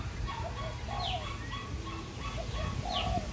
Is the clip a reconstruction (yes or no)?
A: no